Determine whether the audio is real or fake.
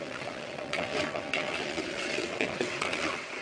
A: fake